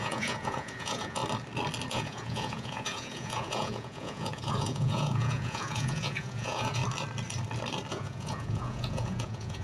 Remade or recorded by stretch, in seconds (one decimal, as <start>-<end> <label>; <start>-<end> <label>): 0.0-1.2 remade; 1.2-1.9 recorded; 1.9-6.8 remade; 6.8-7.9 recorded; 7.9-9.6 remade